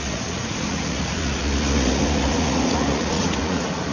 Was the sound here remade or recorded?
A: remade